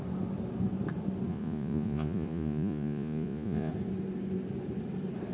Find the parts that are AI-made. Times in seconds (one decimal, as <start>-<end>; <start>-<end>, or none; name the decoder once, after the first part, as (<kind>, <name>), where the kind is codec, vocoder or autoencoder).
1.3-3.7 (vocoder, Vocos)